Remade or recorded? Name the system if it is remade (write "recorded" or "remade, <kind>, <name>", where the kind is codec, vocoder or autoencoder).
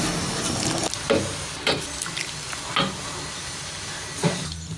recorded